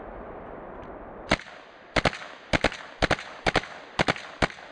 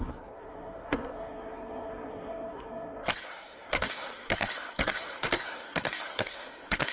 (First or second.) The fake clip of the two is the second